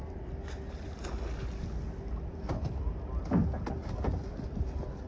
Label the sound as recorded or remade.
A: recorded